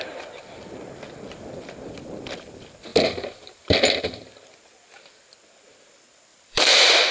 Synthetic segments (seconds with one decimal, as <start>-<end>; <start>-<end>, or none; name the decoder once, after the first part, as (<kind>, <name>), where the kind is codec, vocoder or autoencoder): 6.3-7.1 (vocoder, BigVGAN v2)